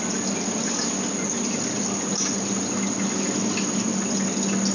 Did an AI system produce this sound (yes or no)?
no